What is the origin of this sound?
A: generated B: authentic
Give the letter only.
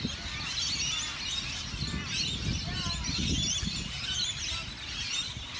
B